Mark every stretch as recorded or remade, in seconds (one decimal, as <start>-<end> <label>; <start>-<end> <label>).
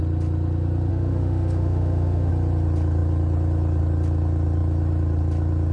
0.0-0.9 recorded; 0.9-2.3 remade; 2.3-5.7 recorded